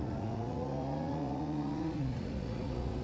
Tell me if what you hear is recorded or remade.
remade